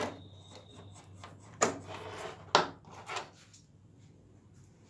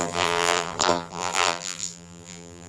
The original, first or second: first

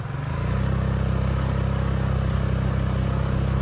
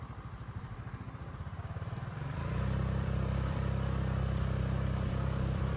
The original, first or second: first